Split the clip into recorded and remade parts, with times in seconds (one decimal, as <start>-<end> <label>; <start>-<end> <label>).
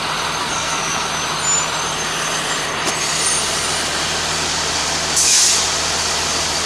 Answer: 0.0-0.4 recorded; 0.4-1.1 remade; 1.1-6.7 recorded